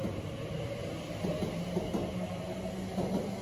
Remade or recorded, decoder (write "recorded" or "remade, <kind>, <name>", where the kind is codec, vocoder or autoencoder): recorded